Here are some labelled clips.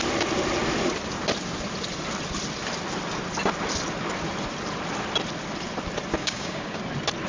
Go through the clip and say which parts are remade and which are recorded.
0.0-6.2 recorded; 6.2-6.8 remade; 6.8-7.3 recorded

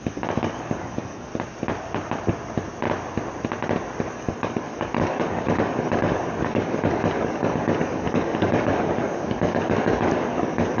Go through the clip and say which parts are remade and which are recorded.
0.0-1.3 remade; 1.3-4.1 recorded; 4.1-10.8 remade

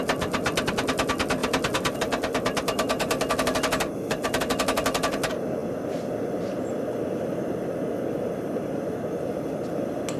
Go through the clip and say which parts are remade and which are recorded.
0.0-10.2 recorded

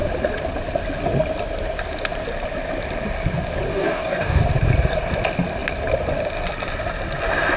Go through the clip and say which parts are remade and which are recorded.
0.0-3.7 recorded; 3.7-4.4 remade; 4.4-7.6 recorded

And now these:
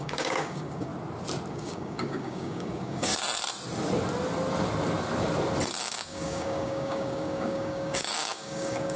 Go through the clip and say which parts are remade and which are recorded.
0.0-0.9 remade; 0.9-1.5 recorded; 1.5-3.1 remade; 3.1-5.8 recorded; 5.8-9.0 remade

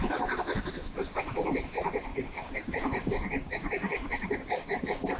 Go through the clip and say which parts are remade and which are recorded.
0.0-2.1 recorded; 2.1-4.8 remade; 4.8-5.2 recorded

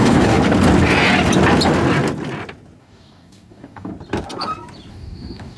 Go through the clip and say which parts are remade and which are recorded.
0.0-0.4 remade; 0.4-2.8 recorded; 2.8-3.9 remade; 3.9-4.9 recorded; 4.9-5.6 remade

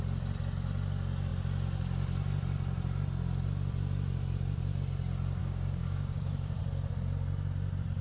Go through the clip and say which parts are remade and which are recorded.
0.0-5.4 recorded; 5.4-6.6 remade; 6.6-8.0 recorded